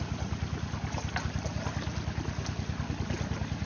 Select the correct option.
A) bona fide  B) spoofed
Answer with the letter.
A